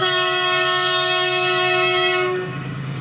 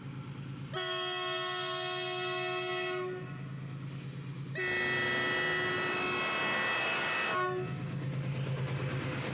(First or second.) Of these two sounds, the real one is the second